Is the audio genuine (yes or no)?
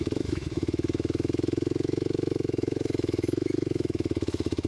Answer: no